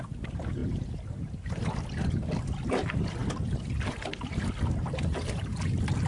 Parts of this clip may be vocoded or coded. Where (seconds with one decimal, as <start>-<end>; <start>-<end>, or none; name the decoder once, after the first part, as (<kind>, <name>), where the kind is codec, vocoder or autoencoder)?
none